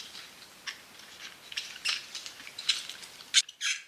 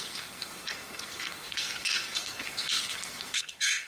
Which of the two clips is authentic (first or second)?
first